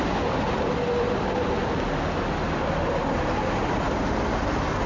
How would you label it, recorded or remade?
recorded